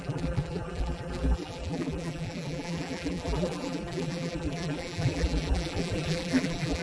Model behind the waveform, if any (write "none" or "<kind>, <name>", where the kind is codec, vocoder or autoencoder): vocoder, BigVGAN v2